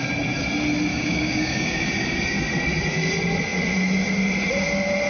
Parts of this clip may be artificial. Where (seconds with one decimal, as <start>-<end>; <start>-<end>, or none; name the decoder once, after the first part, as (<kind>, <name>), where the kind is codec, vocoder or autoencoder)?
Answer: 0.9-2.2 (codec, DAC)